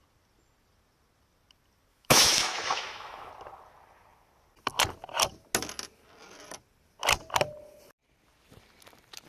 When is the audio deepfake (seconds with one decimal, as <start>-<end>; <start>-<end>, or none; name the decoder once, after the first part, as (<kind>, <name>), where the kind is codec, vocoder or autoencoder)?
1.9-3.3 (autoencoder, DAC-VAE)